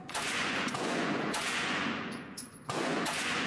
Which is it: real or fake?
fake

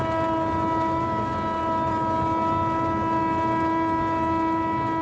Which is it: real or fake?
real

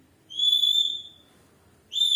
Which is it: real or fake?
fake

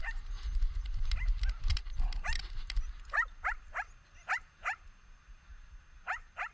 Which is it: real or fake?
real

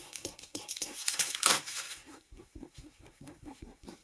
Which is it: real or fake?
fake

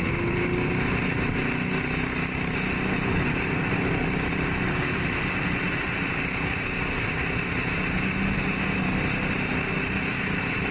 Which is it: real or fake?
real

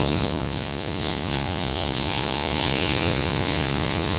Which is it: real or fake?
fake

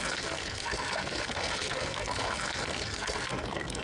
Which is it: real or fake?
fake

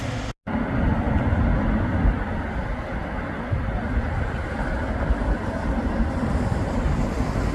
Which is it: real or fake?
real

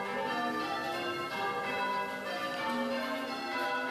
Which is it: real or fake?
real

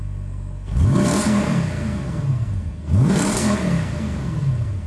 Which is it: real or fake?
fake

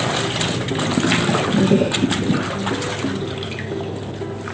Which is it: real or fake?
real